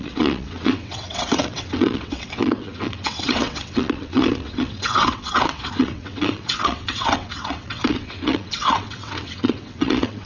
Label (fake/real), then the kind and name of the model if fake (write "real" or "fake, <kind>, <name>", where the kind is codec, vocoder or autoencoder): fake, vocoder, WaveNeXt